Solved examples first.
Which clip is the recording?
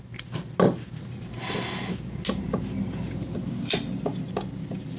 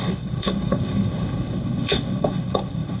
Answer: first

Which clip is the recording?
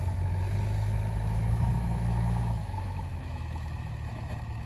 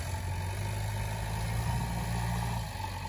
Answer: second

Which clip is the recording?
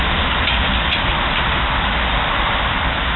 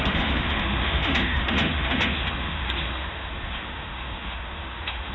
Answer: first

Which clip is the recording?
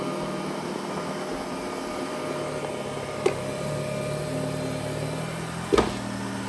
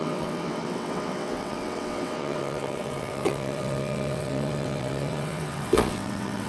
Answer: first